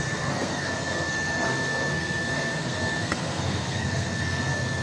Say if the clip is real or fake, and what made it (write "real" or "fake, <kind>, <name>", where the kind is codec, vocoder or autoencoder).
fake, codec, SNAC